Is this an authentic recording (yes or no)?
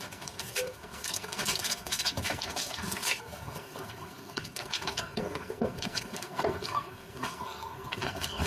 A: no